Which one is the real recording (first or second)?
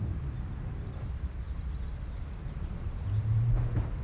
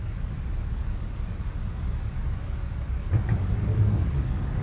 first